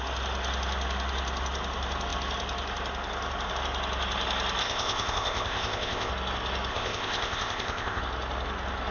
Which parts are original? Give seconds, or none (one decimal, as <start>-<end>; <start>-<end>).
0.0-4.6; 6.1-6.7; 8.0-8.9